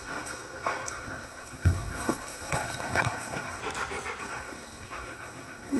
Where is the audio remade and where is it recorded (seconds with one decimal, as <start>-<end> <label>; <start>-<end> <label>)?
0.0-3.6 remade; 3.6-4.2 recorded; 4.2-5.8 remade